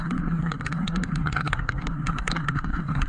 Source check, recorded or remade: remade